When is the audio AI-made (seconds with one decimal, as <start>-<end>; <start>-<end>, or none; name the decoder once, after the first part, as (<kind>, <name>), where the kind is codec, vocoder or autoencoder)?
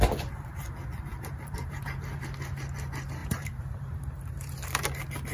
1.1-1.8 (vocoder, BigVGAN v2); 3.2-4.8